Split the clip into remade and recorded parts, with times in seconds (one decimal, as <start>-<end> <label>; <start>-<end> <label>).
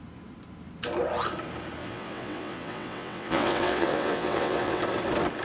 0.0-1.8 recorded; 1.8-4.8 remade; 4.8-5.4 recorded